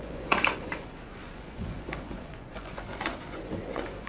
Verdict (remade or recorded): remade